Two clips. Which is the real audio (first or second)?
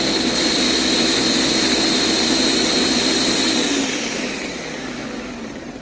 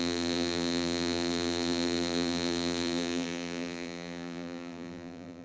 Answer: first